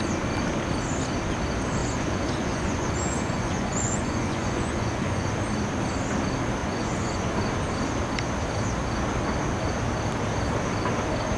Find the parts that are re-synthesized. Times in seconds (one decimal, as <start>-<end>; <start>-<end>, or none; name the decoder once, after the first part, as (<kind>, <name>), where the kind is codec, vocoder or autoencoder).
1.8-5.3 (vocoder, Vocos); 6.6-7.3